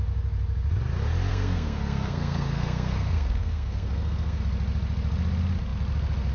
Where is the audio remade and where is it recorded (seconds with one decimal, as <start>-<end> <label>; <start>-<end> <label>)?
0.0-1.3 recorded; 1.3-4.4 remade; 4.4-6.3 recorded